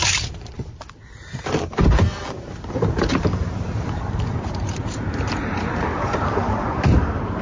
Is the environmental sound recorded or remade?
remade